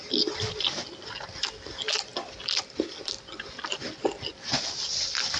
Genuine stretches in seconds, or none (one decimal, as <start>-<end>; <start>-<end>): 0.0-5.4